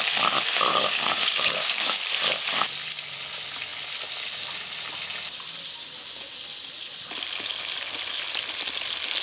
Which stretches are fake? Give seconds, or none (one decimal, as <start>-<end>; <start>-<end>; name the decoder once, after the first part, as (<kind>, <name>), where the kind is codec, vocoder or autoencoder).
0.7-2.1 (codec, DAC)